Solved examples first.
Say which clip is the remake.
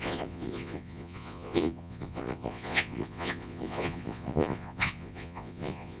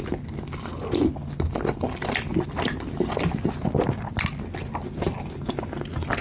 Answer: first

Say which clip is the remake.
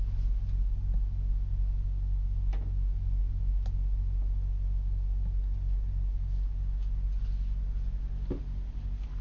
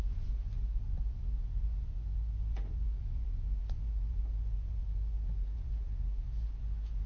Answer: second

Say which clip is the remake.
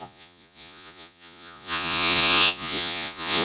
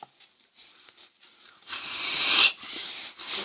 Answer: first